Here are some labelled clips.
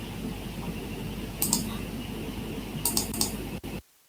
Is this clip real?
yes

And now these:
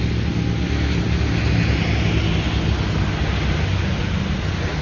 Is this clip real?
yes